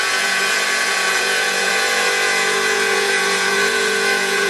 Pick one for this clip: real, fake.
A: fake